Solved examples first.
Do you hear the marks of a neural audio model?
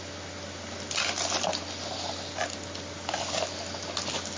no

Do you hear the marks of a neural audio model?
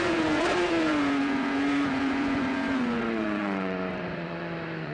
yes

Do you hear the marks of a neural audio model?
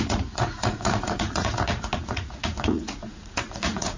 yes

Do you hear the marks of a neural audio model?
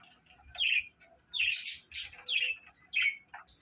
no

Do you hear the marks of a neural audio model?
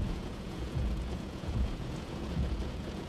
yes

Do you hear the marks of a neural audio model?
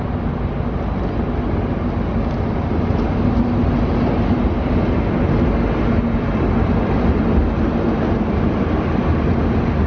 no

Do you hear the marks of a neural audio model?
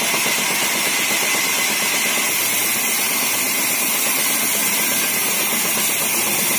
no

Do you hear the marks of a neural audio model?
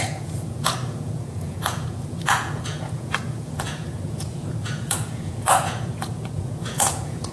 yes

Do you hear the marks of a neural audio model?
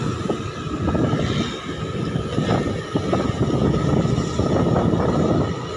no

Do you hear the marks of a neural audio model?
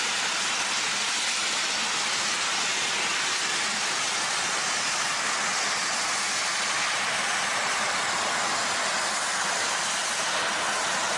no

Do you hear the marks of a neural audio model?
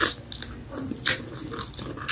no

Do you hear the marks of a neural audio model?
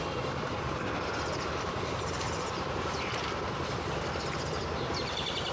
no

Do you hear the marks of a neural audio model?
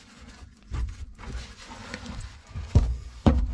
yes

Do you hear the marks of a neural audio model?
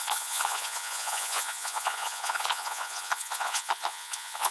yes